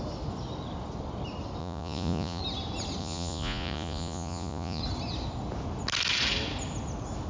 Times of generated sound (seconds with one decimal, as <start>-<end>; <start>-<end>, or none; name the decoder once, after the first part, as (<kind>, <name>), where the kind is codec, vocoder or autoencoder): 1.6-2.4 (vocoder, Vocos); 3.0-4.8